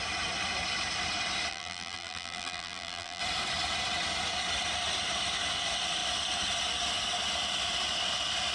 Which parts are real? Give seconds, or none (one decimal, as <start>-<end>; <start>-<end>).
0.0-1.5; 3.2-8.5